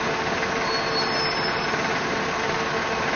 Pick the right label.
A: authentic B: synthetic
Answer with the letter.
A